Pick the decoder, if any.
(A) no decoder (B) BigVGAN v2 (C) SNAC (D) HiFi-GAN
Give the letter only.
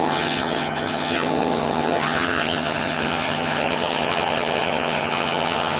D